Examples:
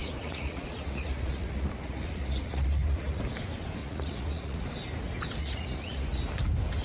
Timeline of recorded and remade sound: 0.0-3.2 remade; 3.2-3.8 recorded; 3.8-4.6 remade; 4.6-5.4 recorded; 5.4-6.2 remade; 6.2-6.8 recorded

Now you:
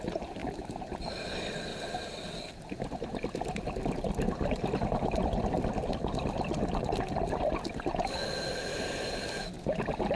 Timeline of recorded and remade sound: 0.0-10.2 recorded

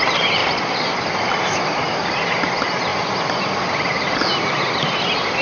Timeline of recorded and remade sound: 0.0-0.4 recorded; 0.4-0.9 remade; 0.9-5.4 recorded

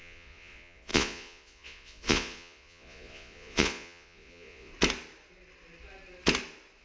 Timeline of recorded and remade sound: 0.0-4.7 remade; 4.7-6.8 recorded

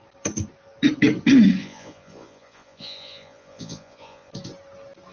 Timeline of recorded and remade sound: 0.0-1.6 recorded; 1.6-4.3 remade; 4.3-5.1 recorded

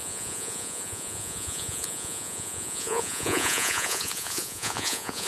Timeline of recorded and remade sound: 0.0-5.3 remade

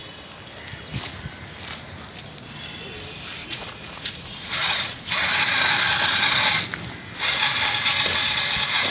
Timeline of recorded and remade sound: 0.0-3.4 recorded; 3.4-5.1 remade; 5.1-8.9 recorded

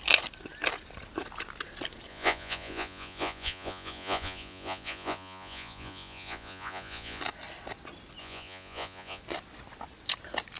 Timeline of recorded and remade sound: 0.0-2.1 recorded; 2.1-7.2 remade; 7.2-8.2 recorded; 8.2-9.2 remade; 9.2-10.6 recorded